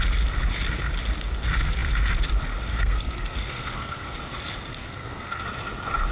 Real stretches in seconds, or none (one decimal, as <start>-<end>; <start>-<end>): 0.0-2.7; 4.2-4.8; 5.4-6.1